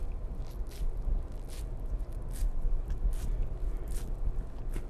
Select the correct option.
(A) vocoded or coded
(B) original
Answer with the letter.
B